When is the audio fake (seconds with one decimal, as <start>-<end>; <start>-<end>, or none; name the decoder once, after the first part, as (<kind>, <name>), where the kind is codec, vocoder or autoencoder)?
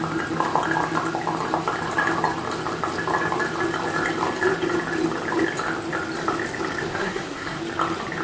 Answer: 6.9-7.6 (codec, SNAC)